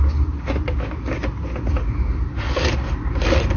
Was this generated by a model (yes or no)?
no